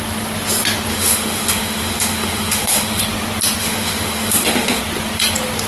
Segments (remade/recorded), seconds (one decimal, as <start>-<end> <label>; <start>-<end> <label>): 0.0-0.9 recorded; 0.9-3.0 remade; 3.0-3.6 recorded; 3.6-4.8 remade; 4.8-5.7 recorded